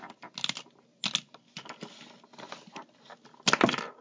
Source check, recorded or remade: recorded